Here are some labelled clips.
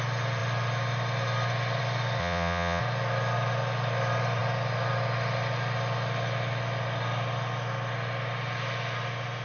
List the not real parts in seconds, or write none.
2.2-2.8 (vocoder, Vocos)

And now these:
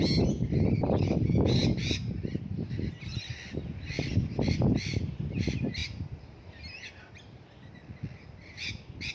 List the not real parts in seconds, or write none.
none